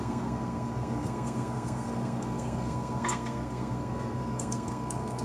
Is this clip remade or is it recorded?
remade